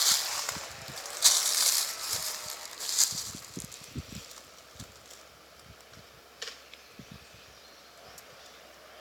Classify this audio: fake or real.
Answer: real